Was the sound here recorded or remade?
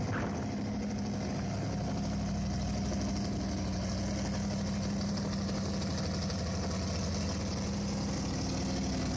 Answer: recorded